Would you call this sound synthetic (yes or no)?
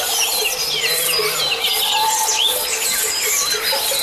no